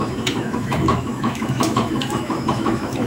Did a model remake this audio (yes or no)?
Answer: yes